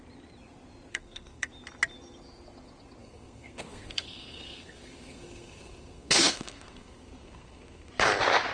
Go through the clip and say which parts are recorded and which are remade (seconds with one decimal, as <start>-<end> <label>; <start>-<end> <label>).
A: 0.0-0.9 recorded; 0.9-1.5 remade; 1.5-3.0 recorded; 3.0-7.9 remade; 7.9-8.5 recorded